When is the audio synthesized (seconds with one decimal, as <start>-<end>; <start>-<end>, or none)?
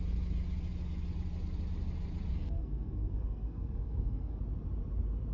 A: 2.3-4.4